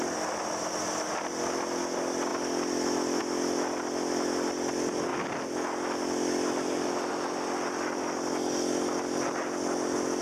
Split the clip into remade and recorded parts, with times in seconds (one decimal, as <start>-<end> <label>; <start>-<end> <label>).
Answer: 0.0-10.2 recorded